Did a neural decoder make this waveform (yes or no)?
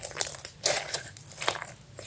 no